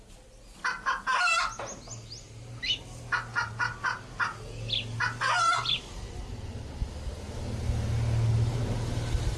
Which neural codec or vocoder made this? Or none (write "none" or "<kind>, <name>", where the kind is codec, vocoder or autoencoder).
none